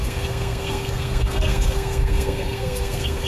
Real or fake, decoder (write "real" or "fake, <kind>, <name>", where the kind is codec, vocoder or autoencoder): fake, codec, SNAC